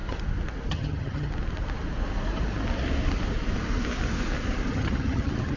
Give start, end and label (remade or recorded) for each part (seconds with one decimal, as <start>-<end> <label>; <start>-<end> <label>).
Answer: 0.0-0.7 recorded; 0.7-1.3 remade; 1.3-4.7 recorded; 4.7-5.6 remade